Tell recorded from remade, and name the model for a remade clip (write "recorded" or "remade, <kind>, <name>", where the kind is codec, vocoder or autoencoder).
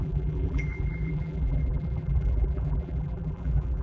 remade, vocoder, BigVGAN v2